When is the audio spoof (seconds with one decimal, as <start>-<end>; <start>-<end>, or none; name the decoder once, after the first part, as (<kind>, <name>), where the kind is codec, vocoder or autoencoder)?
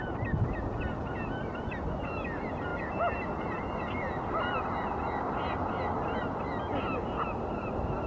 none